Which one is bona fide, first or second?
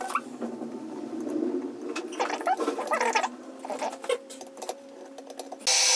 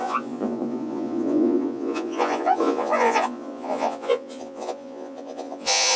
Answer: first